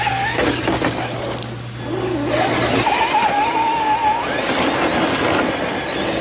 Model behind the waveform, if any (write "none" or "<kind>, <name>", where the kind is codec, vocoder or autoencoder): none